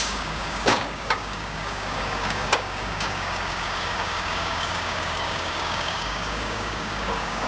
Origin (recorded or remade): remade